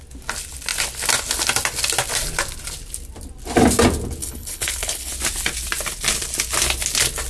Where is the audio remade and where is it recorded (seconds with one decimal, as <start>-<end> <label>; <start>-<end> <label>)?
0.0-4.2 recorded; 4.2-5.1 remade; 5.1-7.3 recorded